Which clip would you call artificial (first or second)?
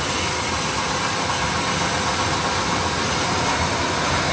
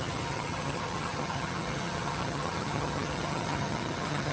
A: second